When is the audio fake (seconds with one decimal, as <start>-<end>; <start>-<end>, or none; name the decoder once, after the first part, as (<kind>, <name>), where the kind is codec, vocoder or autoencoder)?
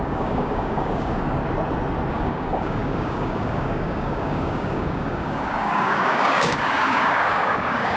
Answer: 0.0-1.4 (codec, DAC); 2.1-8.0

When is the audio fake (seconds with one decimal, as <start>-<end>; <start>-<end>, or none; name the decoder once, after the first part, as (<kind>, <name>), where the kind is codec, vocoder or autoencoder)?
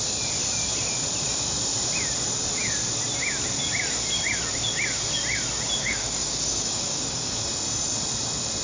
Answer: 5.8-7.4 (codec, DAC)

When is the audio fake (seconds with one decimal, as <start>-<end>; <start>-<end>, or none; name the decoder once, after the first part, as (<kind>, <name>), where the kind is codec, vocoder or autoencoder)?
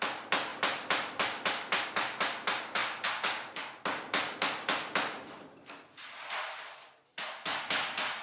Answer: none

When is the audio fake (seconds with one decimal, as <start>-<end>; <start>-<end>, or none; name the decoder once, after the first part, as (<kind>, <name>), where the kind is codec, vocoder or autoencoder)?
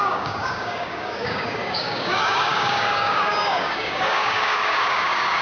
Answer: 0.0-5.4 (codec, DAC)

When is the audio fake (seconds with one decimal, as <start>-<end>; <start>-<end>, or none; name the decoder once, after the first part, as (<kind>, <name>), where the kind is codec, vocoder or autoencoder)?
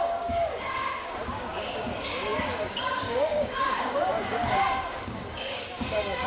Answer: 0.0-6.3 (codec, DAC)